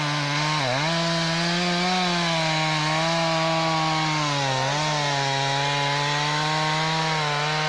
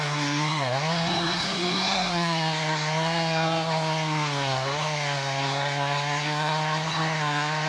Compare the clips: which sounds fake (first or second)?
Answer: second